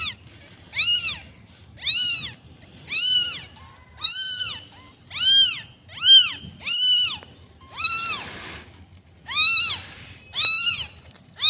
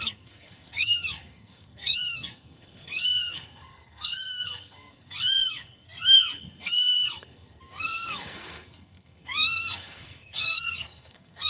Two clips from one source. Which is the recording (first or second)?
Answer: first